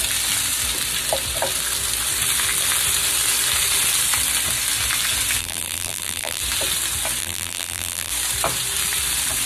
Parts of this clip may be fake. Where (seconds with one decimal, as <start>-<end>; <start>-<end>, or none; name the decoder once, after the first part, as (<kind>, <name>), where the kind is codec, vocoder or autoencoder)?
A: 5.4-6.4 (vocoder, BigVGAN v2); 7.2-8.1